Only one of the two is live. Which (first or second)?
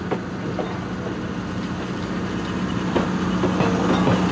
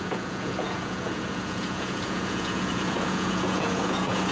first